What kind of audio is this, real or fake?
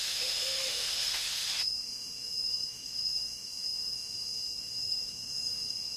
fake